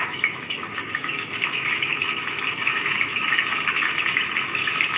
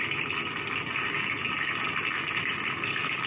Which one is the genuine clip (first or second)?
second